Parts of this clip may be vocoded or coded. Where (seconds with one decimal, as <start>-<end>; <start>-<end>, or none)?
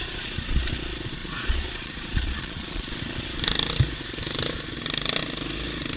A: 0.0-0.6; 1.2-2.9